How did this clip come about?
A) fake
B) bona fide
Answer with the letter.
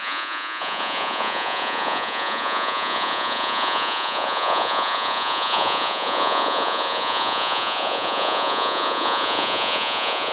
A